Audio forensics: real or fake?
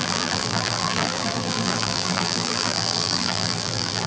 fake